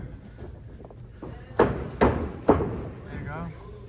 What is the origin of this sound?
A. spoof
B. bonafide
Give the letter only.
B